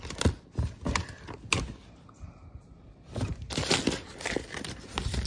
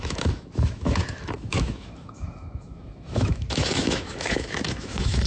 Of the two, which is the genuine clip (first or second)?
first